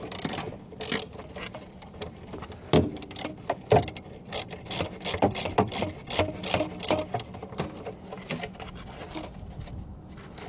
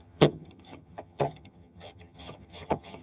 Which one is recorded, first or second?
first